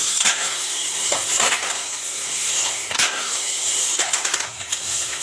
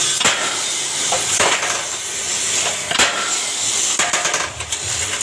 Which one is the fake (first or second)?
first